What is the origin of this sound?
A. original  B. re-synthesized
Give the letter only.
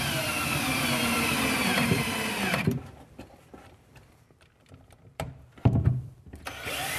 B